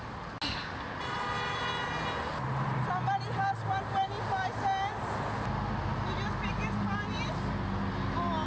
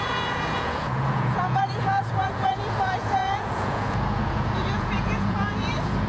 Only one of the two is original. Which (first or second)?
first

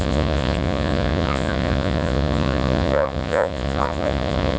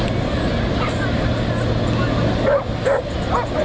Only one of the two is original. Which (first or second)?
second